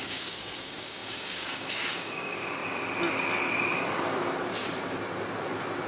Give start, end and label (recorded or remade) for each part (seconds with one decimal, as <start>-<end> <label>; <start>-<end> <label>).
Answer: 0.0-2.6 remade; 2.6-5.9 recorded